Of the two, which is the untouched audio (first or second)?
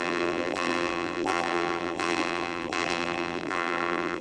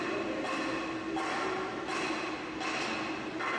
second